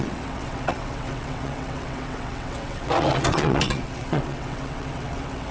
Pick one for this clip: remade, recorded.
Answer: remade